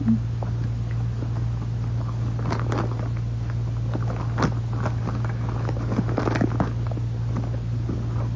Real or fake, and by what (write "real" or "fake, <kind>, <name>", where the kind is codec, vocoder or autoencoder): real